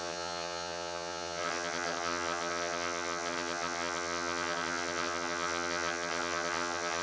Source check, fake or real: fake